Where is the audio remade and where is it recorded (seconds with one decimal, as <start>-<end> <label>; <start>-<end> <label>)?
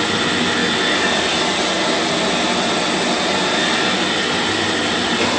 0.0-5.4 recorded